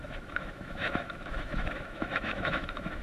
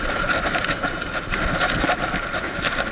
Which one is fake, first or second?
first